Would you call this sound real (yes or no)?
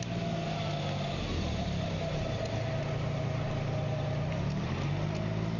yes